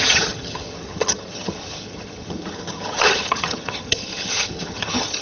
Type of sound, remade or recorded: remade